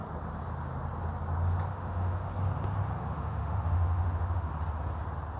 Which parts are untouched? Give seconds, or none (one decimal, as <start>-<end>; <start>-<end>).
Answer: 0.0-1.7; 2.3-3.0; 4.5-5.4